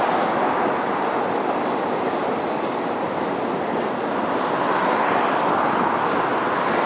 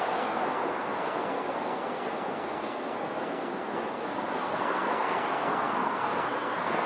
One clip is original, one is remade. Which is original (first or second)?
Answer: first